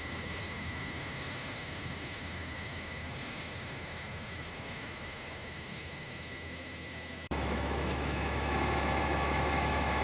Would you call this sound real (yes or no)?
no